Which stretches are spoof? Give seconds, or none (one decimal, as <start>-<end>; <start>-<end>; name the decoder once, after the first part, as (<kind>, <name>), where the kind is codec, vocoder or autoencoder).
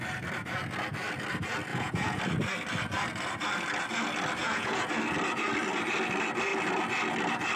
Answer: 1.7-2.2 (vocoder, Vocos); 4.4-4.9